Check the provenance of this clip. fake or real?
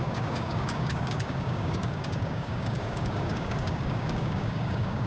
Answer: fake